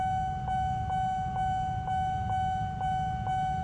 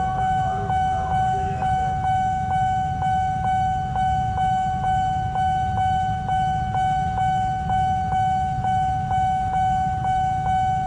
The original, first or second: first